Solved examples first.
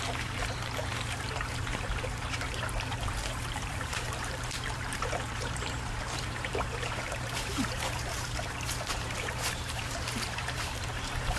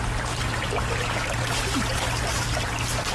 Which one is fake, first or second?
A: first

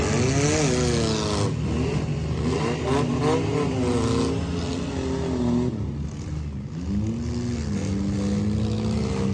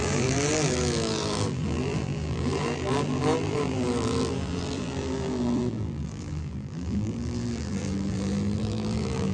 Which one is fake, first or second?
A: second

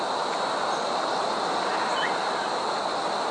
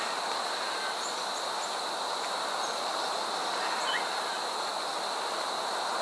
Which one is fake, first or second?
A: first